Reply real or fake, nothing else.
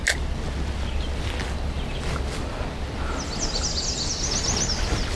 real